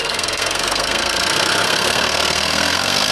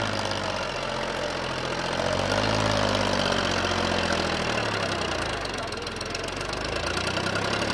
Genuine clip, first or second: second